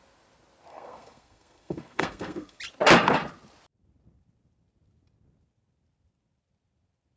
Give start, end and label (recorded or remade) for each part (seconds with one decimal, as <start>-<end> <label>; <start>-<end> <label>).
0.0-0.7 recorded; 0.7-2.6 remade; 2.6-7.2 recorded